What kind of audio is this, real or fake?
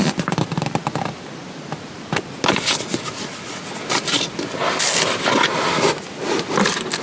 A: real